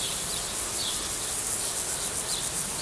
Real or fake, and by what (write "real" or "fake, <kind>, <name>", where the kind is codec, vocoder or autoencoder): real